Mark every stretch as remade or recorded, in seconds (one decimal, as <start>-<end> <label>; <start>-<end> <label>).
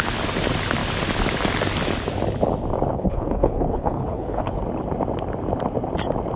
0.0-2.9 recorded; 2.9-4.6 remade; 4.6-6.4 recorded